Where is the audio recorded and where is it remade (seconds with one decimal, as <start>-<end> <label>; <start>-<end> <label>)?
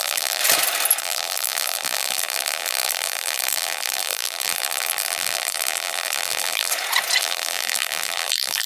0.0-0.4 remade; 0.4-1.0 recorded; 1.0-6.7 remade; 6.7-7.2 recorded; 7.2-8.7 remade